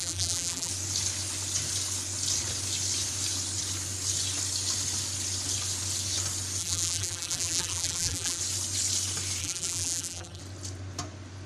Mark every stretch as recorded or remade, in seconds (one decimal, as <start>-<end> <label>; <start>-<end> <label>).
0.0-0.7 remade; 0.7-6.6 recorded; 6.6-8.4 remade; 8.4-9.4 recorded; 9.4-10.4 remade; 10.4-11.5 recorded